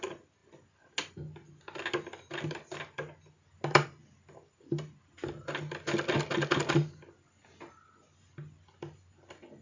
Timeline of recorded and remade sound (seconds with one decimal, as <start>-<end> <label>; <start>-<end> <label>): 0.0-9.6 recorded